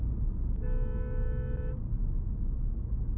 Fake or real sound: real